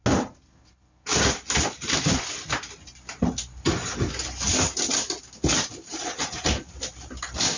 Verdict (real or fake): real